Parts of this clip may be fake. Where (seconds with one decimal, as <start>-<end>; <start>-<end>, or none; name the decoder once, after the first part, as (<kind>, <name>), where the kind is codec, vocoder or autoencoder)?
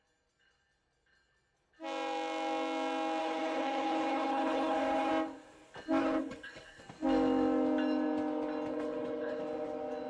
3.2-5.1 (codec, HILCodec); 6.0-6.8; 8.7-9.4